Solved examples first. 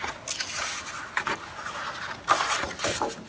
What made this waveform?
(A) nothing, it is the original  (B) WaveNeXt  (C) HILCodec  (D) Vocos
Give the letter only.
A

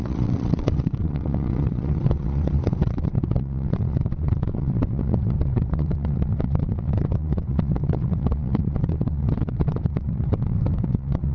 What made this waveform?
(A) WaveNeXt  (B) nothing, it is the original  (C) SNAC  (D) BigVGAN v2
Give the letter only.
A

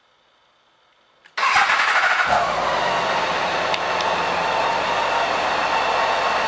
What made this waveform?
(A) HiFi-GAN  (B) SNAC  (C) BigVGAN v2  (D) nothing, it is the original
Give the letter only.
D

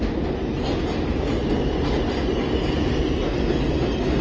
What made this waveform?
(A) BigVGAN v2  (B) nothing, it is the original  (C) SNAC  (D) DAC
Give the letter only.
B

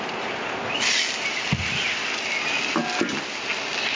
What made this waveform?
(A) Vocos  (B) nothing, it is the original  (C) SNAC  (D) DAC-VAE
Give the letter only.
B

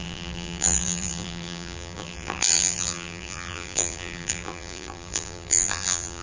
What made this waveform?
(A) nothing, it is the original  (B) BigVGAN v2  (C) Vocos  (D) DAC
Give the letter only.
B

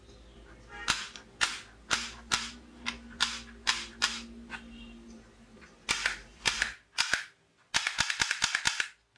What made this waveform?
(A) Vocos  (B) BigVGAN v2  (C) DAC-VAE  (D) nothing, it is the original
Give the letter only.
D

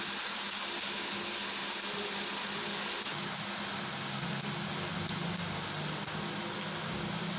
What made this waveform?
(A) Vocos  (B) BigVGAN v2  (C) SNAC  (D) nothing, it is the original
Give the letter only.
D